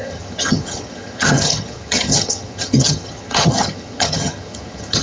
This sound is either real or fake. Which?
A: fake